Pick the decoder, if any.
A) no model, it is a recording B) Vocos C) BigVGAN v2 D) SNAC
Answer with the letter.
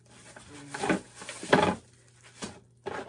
A